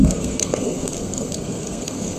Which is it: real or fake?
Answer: fake